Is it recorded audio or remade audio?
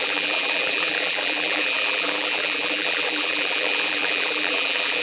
remade